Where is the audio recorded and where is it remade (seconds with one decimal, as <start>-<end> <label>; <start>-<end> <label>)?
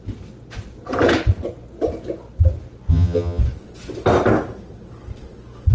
0.0-2.9 recorded; 2.9-3.4 remade; 3.4-5.7 recorded